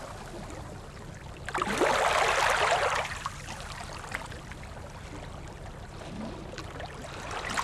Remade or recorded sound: recorded